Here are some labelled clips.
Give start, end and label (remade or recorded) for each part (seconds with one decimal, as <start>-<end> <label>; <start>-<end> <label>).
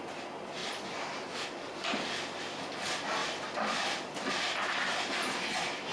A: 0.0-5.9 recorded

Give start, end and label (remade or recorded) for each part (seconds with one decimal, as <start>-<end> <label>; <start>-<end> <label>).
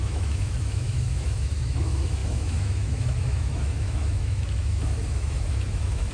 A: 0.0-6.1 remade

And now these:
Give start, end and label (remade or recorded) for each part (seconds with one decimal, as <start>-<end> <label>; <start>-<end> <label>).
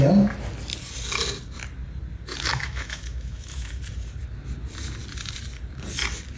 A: 0.0-2.5 recorded; 2.5-3.8 remade; 3.8-6.4 recorded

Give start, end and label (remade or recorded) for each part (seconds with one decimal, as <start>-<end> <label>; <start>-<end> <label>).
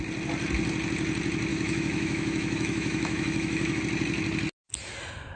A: 0.0-1.5 recorded; 1.5-3.8 remade; 3.8-5.4 recorded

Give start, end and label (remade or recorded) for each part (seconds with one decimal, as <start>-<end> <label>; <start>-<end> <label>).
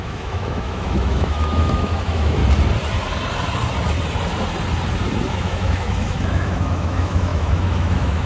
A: 0.0-2.4 remade; 2.4-5.3 recorded; 5.3-8.3 remade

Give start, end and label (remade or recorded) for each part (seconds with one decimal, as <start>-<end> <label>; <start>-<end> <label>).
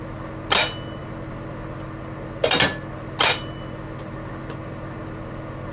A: 0.0-5.7 recorded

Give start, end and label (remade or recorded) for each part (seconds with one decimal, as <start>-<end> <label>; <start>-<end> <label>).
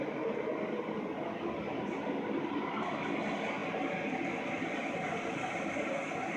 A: 0.0-6.4 recorded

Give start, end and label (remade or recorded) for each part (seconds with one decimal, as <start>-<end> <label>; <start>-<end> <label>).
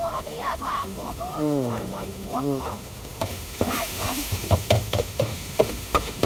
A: 0.0-6.3 remade